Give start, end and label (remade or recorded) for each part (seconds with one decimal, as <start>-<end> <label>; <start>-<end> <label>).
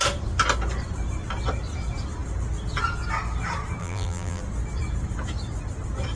0.0-3.8 recorded; 3.8-4.4 remade; 4.4-6.2 recorded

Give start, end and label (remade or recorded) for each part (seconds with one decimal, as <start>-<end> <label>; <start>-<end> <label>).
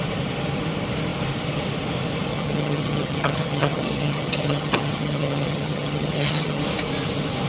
0.0-2.3 recorded; 2.3-6.6 remade; 6.6-7.5 recorded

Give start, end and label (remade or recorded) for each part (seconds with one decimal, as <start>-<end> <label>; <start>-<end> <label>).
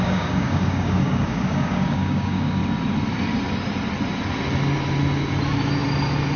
0.0-2.6 remade; 2.6-6.4 recorded